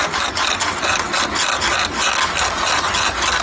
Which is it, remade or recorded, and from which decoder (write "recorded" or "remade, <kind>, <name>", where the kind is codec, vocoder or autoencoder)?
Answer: recorded